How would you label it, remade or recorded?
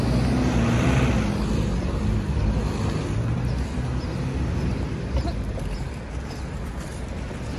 recorded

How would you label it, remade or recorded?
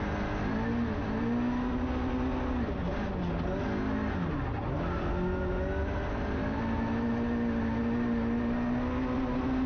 recorded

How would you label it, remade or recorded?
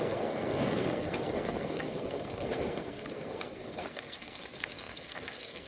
remade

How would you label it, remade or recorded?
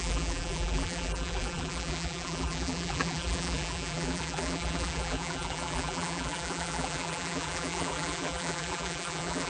remade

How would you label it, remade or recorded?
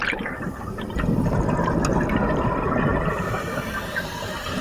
recorded